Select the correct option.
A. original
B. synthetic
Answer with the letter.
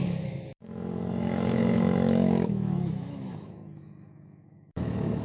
B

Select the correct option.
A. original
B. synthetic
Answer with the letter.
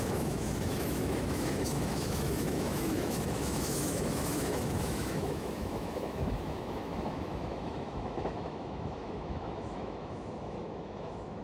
B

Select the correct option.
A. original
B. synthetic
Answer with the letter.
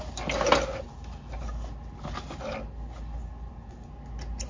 A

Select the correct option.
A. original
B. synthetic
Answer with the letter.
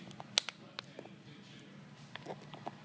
A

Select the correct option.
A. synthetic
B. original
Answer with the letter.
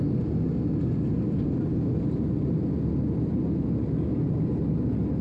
B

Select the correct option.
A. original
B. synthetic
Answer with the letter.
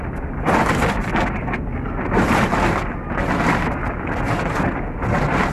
A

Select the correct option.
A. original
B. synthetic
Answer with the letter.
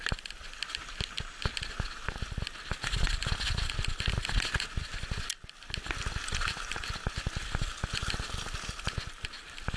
A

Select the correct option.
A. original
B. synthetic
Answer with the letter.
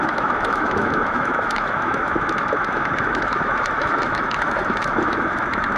B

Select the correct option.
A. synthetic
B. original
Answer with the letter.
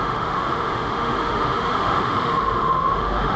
A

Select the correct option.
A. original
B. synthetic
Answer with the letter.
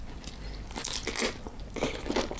A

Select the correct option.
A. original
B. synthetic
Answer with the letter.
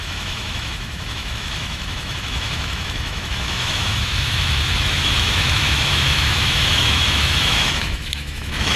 B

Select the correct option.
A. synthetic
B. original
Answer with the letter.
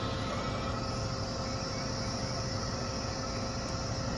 B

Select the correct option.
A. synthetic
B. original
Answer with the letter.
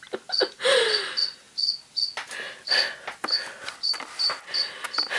B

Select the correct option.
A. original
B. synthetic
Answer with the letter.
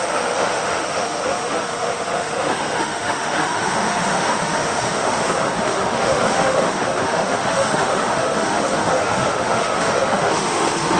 B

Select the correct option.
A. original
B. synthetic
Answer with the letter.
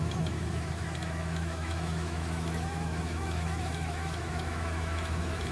B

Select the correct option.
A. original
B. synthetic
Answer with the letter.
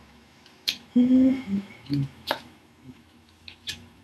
B